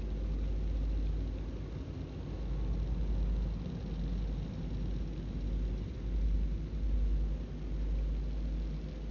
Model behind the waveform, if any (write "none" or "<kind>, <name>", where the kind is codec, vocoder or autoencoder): none